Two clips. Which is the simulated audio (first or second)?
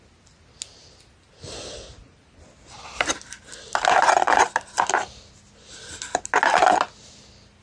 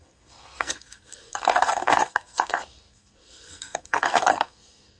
second